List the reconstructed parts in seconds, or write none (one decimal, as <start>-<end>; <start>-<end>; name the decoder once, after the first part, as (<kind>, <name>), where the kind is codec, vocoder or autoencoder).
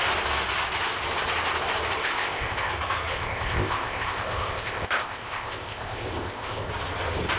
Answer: 2.0-2.7 (codec, ZipCodec); 3.1-6.7